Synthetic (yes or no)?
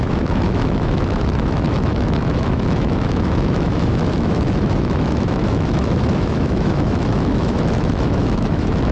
yes